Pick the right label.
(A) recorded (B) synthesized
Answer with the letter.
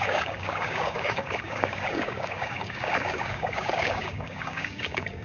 B